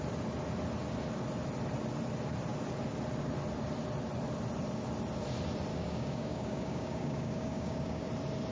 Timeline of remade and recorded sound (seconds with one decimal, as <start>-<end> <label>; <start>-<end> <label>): 0.0-5.7 recorded; 5.7-8.1 remade; 8.1-8.5 recorded